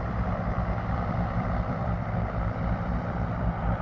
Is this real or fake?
fake